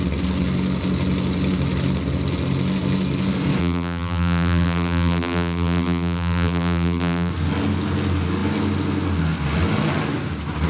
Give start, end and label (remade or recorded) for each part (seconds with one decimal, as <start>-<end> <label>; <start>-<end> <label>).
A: 0.0-3.6 recorded; 3.6-7.3 remade; 7.3-10.7 recorded